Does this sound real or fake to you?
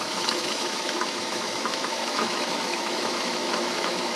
fake